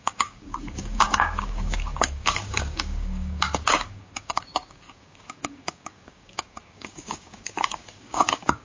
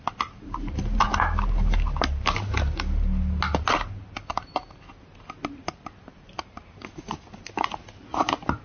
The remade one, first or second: first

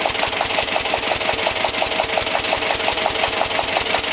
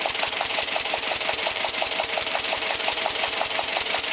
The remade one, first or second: second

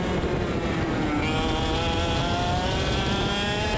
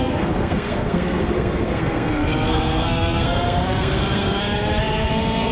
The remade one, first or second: second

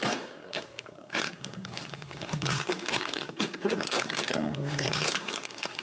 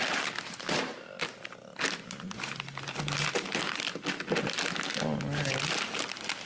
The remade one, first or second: first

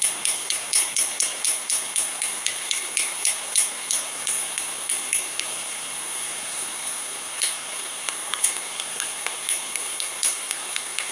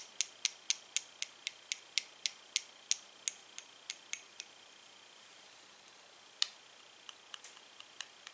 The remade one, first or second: first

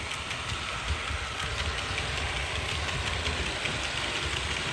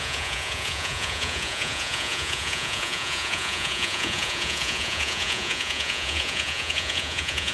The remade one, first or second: second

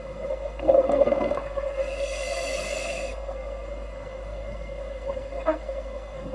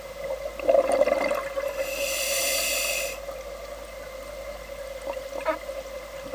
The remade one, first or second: first